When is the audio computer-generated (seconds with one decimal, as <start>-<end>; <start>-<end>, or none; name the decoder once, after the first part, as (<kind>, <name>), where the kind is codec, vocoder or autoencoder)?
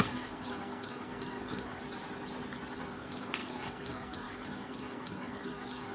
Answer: 0.0-1.8 (codec, SNAC); 2.8-5.9